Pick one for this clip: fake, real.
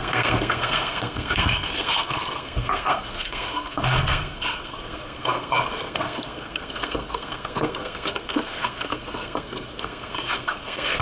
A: fake